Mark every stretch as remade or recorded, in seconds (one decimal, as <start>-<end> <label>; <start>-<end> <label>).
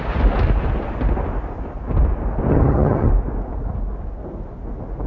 0.0-2.5 recorded; 2.5-3.1 remade; 3.1-5.1 recorded